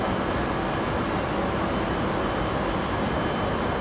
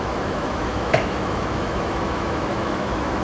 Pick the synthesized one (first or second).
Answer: second